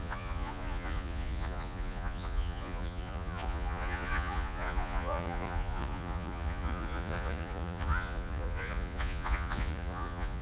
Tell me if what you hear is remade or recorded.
remade